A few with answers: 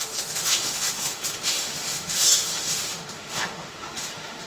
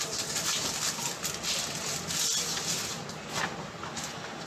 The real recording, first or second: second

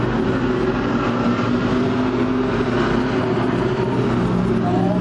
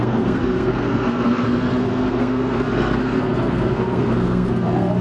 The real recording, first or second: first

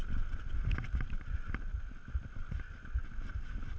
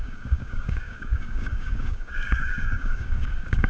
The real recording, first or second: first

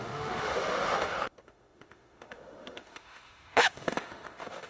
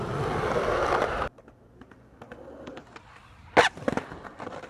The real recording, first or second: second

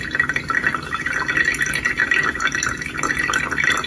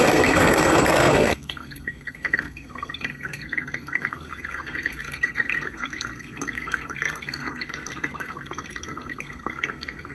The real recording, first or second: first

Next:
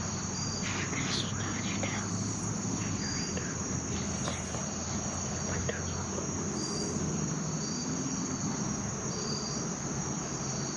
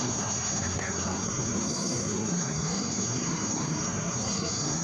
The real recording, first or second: first